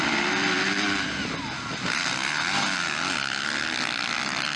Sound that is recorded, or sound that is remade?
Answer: recorded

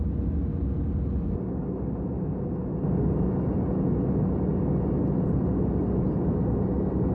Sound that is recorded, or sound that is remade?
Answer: recorded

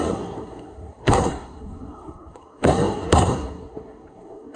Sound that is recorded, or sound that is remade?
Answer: remade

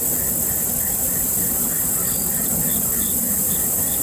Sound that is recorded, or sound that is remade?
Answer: recorded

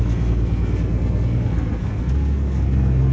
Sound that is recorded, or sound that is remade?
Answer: remade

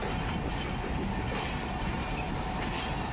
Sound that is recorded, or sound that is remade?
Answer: recorded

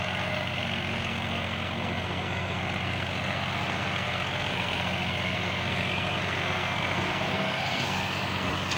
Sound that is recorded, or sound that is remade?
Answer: remade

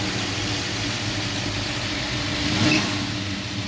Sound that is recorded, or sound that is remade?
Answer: recorded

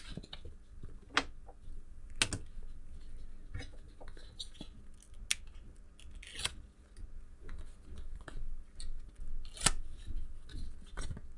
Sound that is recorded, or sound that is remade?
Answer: recorded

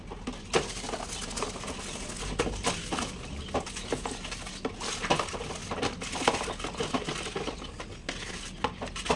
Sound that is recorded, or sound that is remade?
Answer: recorded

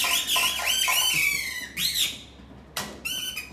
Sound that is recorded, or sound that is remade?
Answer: recorded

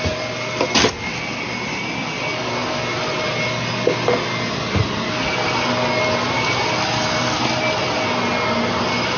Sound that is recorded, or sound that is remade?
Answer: recorded